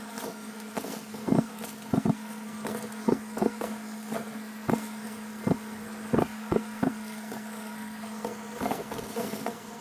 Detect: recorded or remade remade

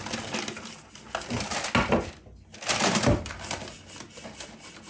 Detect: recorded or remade recorded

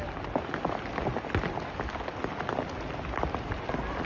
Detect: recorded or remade recorded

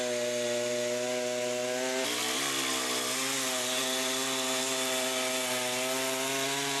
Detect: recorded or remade recorded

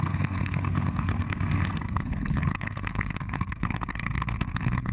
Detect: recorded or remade remade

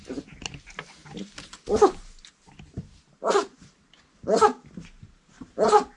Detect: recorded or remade recorded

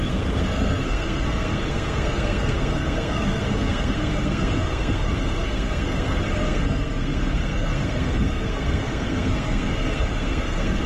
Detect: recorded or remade remade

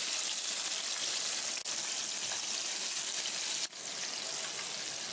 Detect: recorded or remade recorded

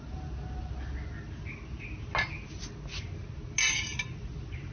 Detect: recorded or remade recorded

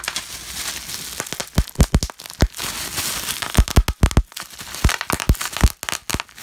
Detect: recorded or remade recorded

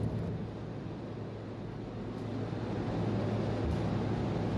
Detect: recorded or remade recorded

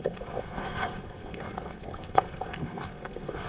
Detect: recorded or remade remade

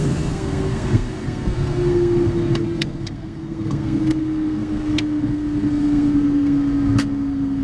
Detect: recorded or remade remade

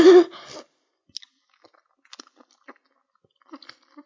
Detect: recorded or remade recorded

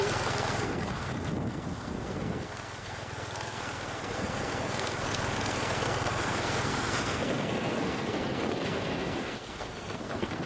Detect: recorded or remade remade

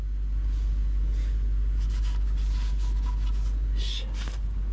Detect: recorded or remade recorded